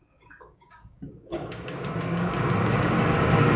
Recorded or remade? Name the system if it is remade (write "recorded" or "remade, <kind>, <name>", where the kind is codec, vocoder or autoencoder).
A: remade, codec, DAC